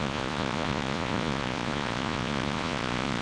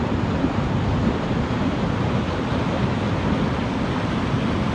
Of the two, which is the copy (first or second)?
first